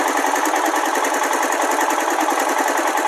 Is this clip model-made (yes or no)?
no